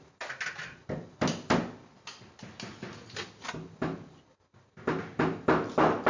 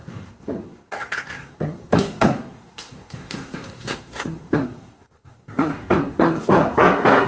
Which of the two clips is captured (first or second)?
first